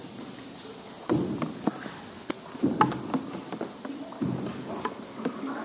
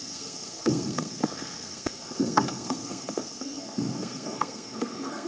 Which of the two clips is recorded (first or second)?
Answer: first